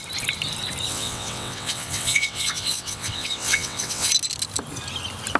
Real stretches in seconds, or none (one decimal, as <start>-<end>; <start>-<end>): 0.0-0.9; 4.1-5.4